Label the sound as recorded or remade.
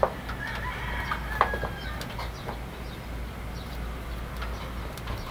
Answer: recorded